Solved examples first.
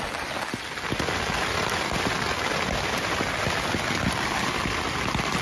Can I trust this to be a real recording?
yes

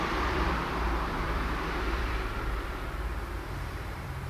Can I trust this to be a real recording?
no